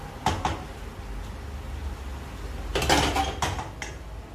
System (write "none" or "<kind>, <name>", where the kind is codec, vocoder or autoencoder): none